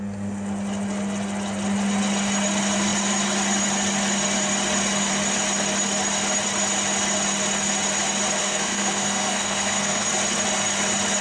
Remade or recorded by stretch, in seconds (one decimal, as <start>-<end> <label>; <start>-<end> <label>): 0.0-8.4 recorded; 8.4-10.1 remade; 10.1-11.2 recorded